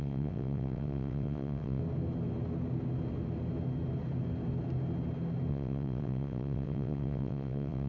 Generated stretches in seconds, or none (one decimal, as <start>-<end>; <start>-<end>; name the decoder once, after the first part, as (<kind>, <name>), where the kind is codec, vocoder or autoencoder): 0.0-1.8 (vocoder, WaveNeXt); 5.5-7.9